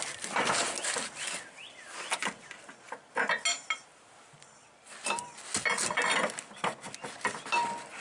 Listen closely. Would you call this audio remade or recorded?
recorded